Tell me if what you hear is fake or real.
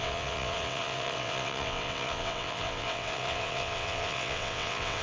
fake